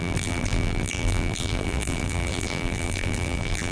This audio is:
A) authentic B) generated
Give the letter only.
B